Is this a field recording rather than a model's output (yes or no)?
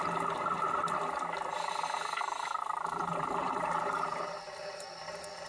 yes